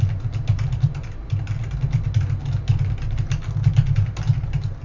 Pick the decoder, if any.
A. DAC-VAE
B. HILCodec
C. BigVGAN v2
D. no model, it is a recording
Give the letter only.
D